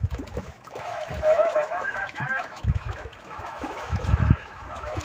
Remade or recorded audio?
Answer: remade